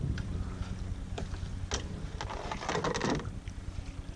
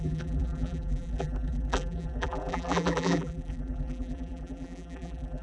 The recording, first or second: first